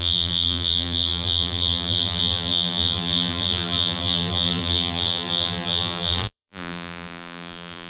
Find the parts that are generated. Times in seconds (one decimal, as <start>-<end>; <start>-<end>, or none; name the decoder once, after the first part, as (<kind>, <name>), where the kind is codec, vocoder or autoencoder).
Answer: 0.0-7.9 (vocoder, BigVGAN v2)